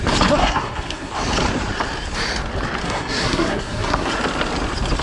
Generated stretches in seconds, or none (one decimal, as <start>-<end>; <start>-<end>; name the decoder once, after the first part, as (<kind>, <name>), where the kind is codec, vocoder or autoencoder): 0.4-1.1 (codec, SNAC); 2.8-4.1